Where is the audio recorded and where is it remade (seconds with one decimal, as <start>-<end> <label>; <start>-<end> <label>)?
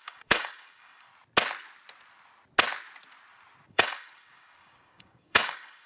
0.0-1.1 remade; 1.1-3.7 recorded; 3.7-5.9 remade